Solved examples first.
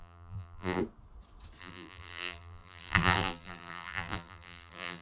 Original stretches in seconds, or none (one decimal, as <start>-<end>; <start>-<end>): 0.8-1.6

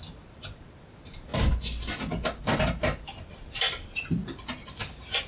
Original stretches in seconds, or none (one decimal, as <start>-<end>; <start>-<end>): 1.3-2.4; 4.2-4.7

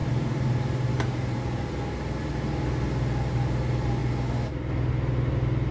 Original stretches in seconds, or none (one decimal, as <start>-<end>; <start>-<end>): 1.4-5.7

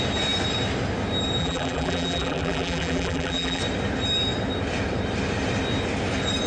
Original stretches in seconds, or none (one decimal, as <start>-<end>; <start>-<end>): 0.0-1.4; 3.6-6.5

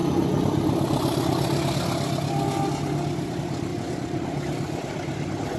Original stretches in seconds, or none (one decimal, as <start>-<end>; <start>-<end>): 0.0-3.7

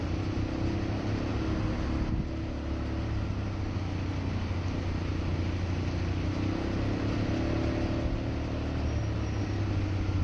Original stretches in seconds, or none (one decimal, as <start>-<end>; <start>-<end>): 0.0-10.2

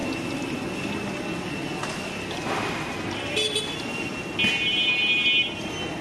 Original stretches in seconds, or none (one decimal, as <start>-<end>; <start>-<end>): 0.0-6.0

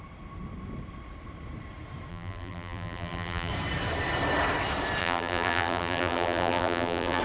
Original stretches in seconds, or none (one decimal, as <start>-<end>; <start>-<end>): 0.0-2.1; 3.5-5.0